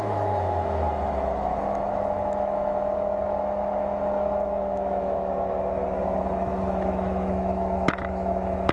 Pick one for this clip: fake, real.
fake